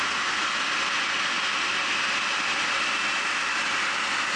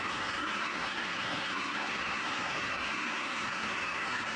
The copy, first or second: second